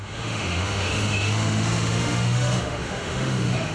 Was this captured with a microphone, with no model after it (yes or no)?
no